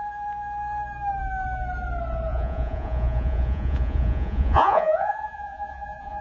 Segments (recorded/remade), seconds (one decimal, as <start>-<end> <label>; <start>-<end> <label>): 0.0-2.3 recorded; 2.3-6.2 remade